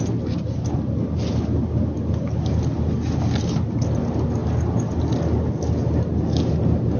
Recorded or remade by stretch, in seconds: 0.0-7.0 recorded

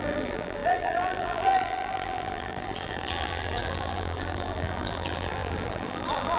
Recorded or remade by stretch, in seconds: 0.0-6.4 remade

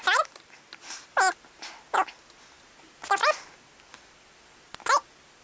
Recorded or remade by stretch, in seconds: 0.0-5.4 recorded

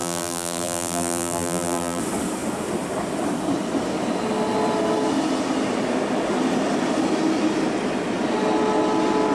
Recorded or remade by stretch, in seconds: 0.0-2.0 remade; 2.0-9.3 recorded